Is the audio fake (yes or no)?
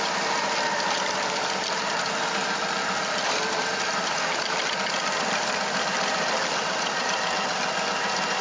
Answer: no